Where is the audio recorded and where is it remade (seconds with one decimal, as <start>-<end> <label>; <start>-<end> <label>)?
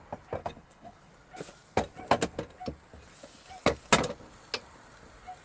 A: 0.0-0.4 recorded; 0.4-1.1 remade; 1.1-5.4 recorded